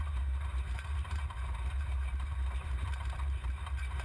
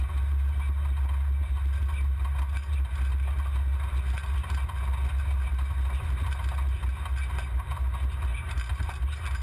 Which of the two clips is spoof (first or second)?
first